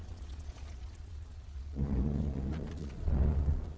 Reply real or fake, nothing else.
fake